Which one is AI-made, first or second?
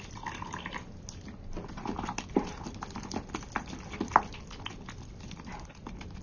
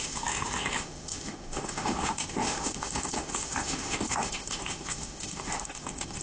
second